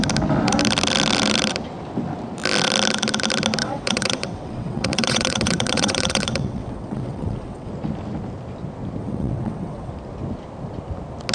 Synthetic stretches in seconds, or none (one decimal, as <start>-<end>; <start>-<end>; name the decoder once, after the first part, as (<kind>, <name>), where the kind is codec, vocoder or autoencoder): 3.6-7.7 (vocoder, WaveNeXt); 9.0-9.9